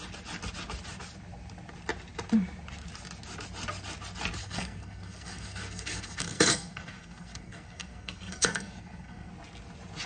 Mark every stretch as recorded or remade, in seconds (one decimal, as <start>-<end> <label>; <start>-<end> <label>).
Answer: 0.0-4.4 recorded; 4.4-9.3 remade; 9.3-10.1 recorded